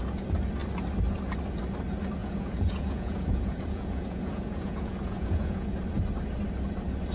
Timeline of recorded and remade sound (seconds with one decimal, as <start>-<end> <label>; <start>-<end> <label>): 0.0-2.2 recorded; 2.2-5.7 remade; 5.7-7.1 recorded